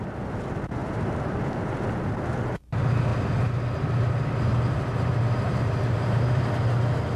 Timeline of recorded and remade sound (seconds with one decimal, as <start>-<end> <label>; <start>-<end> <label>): 0.0-0.8 recorded; 0.8-1.7 remade; 1.7-4.5 recorded; 4.5-6.4 remade; 6.4-7.2 recorded